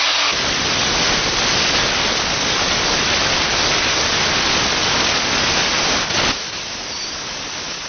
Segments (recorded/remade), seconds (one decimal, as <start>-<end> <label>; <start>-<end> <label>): 0.0-7.9 recorded